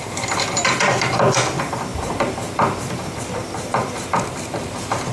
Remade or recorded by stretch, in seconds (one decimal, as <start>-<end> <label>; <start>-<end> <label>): 0.0-1.9 remade; 1.9-3.3 recorded; 3.3-5.1 remade